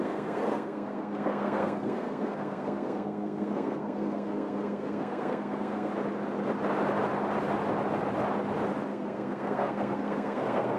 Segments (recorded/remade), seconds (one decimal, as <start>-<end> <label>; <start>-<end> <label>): 0.0-5.9 remade; 5.9-8.9 recorded; 8.9-10.8 remade